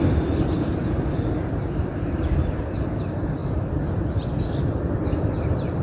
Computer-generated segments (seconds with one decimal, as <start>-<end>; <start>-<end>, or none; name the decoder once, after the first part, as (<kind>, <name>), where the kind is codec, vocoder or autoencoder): 0.8-2.8 (vocoder, BigVGAN v2); 3.4-4.7